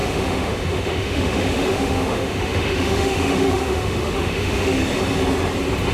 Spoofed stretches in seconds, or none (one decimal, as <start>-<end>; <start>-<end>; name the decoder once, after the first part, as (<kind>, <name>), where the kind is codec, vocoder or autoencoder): 0.0-4.8 (autoencoder, DAC-VAE)